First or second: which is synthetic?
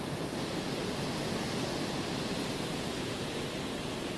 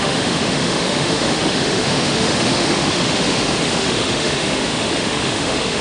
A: second